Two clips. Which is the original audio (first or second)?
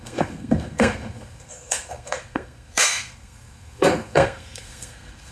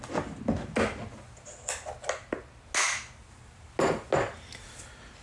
second